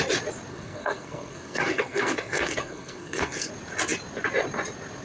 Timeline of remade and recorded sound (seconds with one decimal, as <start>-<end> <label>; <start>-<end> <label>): 0.0-0.5 recorded; 0.5-3.5 remade; 3.5-5.0 recorded